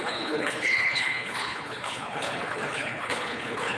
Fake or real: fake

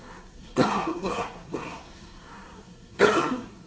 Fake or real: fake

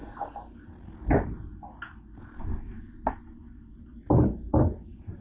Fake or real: real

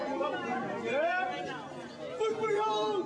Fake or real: real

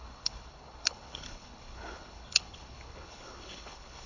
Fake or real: fake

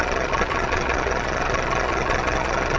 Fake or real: fake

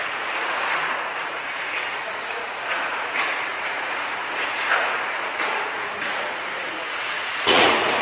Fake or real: fake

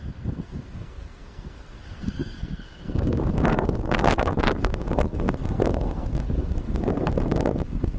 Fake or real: fake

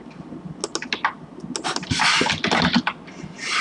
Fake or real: real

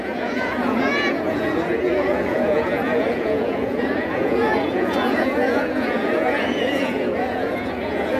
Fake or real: fake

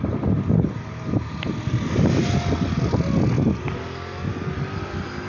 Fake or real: real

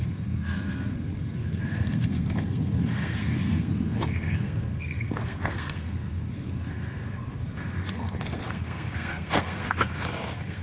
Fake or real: fake